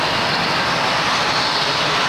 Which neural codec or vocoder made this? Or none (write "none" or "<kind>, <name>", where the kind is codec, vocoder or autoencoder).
none